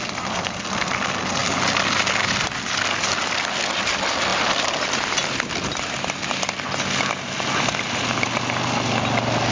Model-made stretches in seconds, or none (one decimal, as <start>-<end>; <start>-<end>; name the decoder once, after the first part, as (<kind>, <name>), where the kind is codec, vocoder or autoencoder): none